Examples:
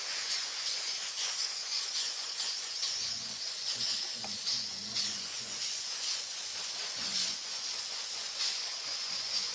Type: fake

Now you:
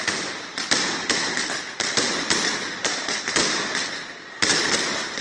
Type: fake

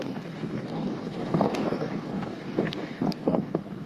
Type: fake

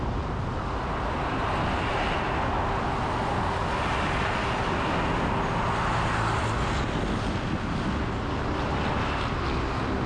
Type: real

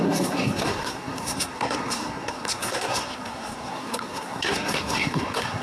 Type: fake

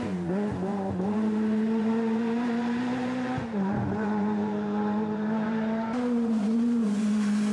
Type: fake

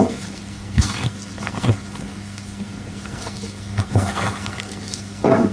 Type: fake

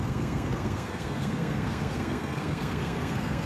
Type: fake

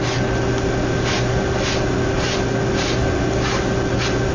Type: real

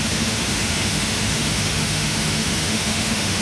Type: fake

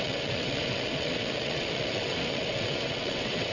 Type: fake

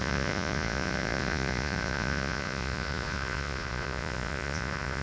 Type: fake